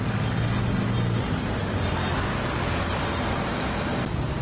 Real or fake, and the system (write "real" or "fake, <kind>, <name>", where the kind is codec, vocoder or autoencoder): real